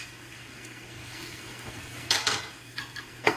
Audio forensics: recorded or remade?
remade